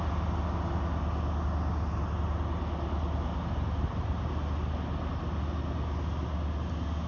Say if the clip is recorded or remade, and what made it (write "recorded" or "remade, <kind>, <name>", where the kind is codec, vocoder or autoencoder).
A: recorded